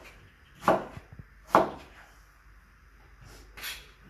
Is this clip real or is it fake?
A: real